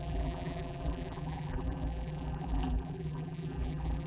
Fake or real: fake